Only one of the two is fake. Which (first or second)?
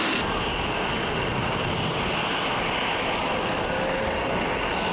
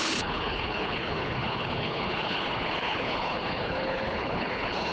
second